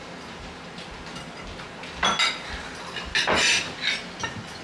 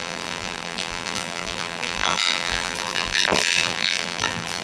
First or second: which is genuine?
first